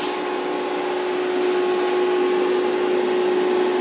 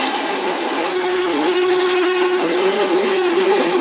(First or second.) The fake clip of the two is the second